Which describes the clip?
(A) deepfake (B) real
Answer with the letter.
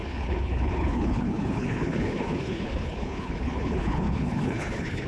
A